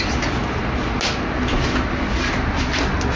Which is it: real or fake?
real